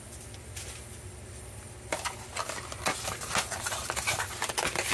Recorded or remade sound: recorded